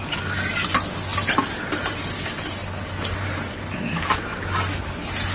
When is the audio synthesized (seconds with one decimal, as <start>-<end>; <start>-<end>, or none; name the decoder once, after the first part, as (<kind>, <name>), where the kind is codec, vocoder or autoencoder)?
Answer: 1.1-2.1 (vocoder, BigVGAN v2); 2.6-3.7